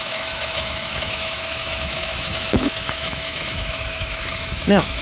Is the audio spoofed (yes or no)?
yes